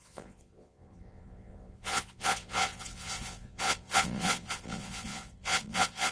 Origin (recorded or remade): remade